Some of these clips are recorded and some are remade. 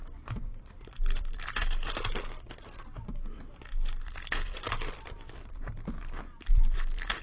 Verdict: remade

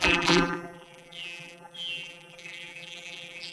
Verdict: remade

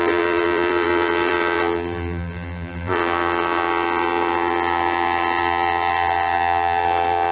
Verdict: remade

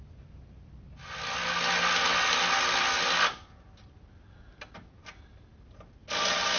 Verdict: recorded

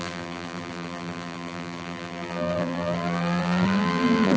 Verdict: remade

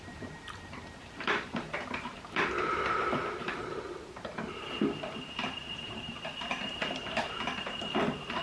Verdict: remade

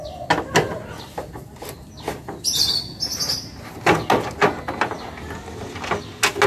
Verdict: recorded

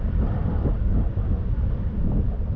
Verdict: remade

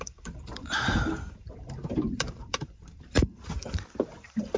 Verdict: remade